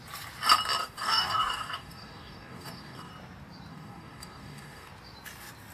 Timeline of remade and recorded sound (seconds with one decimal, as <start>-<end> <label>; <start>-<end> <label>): 0.0-0.8 recorded; 0.8-3.1 remade; 3.1-3.7 recorded; 3.7-4.9 remade; 4.9-5.7 recorded